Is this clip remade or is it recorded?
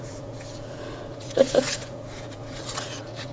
remade